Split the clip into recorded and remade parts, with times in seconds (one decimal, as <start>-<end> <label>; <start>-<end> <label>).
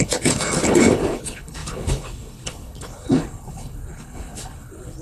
0.0-5.0 remade